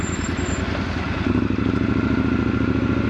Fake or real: real